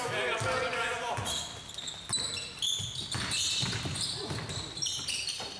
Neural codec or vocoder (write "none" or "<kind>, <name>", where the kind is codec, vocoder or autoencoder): none